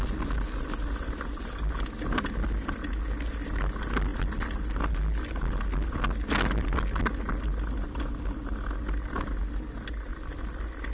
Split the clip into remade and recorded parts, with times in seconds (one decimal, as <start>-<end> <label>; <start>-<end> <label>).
0.0-10.9 recorded